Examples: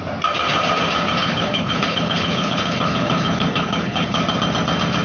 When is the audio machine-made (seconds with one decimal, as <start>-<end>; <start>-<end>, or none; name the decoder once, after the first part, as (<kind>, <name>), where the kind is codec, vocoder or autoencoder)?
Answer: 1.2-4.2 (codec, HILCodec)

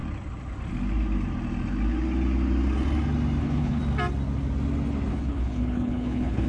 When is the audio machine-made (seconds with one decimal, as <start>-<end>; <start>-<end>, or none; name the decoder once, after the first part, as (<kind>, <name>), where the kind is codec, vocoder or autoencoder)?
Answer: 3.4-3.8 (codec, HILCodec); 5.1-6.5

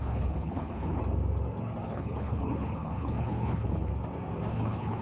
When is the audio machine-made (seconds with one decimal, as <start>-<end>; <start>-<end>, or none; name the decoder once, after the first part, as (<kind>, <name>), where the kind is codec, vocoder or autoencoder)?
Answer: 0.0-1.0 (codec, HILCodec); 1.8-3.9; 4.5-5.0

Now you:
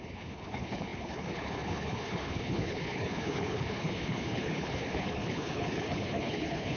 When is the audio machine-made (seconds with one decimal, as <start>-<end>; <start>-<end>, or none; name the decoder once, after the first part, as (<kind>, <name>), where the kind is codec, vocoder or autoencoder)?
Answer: 0.0-6.8 (codec, HILCodec)